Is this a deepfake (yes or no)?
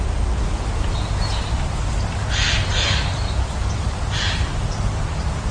no